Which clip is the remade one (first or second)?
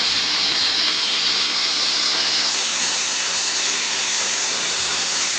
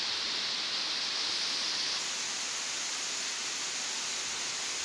first